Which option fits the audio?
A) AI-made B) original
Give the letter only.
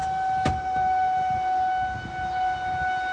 B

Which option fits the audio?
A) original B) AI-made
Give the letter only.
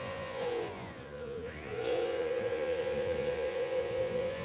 B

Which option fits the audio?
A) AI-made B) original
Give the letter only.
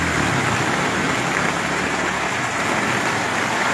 B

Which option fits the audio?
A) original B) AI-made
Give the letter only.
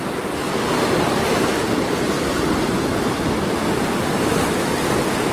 A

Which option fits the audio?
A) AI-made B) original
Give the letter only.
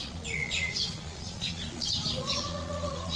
A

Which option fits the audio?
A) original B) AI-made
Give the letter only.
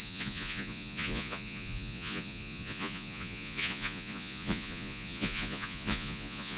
B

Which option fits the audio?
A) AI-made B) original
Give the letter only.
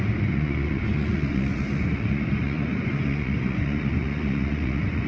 A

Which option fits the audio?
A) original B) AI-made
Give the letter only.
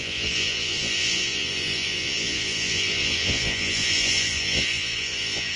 B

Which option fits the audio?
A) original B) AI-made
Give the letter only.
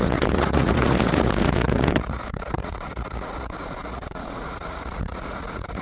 B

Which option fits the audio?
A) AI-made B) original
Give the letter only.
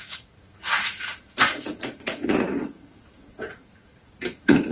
A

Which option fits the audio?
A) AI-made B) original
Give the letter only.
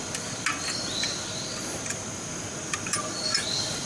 B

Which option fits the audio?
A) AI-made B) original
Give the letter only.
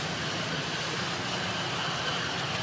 B